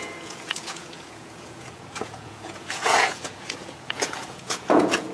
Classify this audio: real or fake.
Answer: fake